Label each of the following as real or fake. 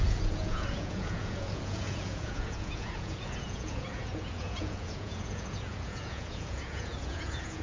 fake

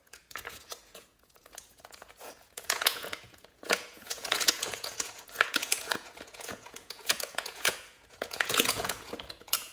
fake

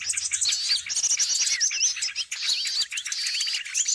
real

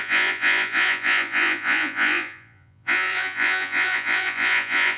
fake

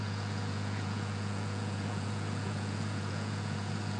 fake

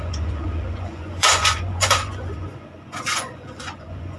fake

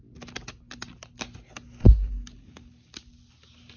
real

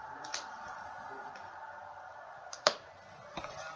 real